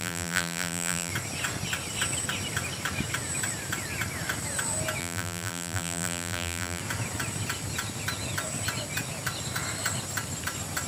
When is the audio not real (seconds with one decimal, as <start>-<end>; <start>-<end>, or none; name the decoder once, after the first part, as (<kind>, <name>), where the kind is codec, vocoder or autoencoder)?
0.0-1.1 (vocoder, BigVGAN v2); 5.0-6.8